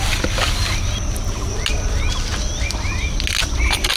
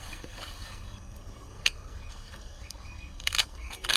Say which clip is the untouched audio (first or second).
first